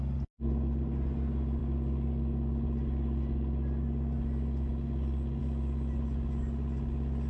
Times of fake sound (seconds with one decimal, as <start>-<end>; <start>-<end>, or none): none

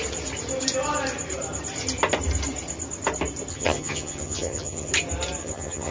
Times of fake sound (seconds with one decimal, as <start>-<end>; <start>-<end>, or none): 3.5-4.9; 5.4-5.9

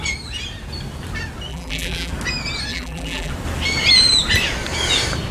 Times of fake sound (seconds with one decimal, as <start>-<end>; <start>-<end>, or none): 1.5-2.1; 2.7-3.3

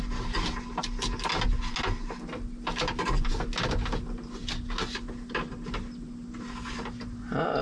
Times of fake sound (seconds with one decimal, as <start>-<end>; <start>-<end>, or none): none

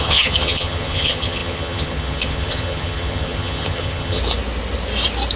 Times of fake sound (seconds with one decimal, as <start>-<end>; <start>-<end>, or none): 0.0-4.2

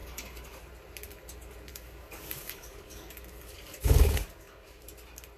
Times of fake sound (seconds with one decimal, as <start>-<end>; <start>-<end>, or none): 0.0-0.6; 1.7-4.9